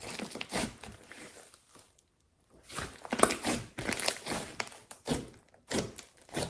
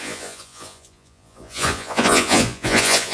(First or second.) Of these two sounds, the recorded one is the first